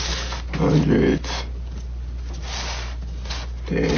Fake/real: real